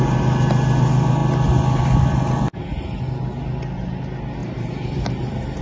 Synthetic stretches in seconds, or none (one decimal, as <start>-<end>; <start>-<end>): 4.4-5.6